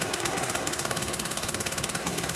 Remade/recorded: remade